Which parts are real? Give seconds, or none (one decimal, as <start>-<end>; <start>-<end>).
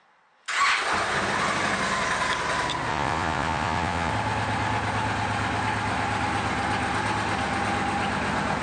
0.0-2.9; 4.1-8.6